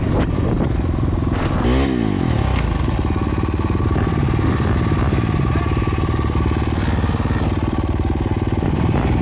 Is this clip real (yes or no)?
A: yes